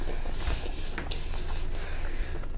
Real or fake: real